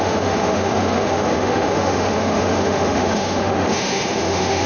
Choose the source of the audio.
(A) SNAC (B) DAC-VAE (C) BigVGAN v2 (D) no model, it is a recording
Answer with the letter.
B